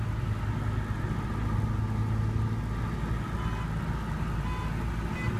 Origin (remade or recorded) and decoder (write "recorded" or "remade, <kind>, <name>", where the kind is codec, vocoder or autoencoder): recorded